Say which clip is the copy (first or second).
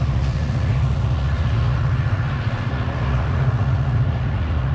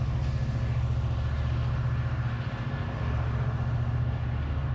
first